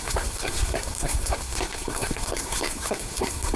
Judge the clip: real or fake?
fake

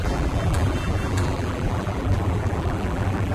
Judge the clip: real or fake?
fake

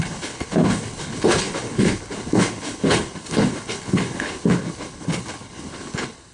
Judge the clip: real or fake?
fake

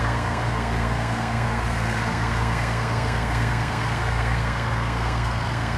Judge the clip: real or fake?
fake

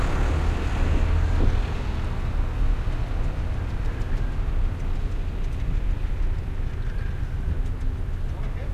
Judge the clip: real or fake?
real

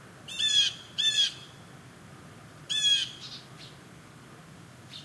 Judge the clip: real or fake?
fake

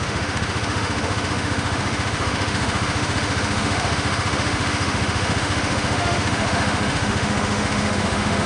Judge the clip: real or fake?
fake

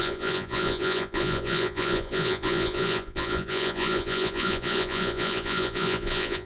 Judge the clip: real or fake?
fake